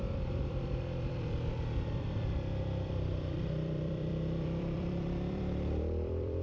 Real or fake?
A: fake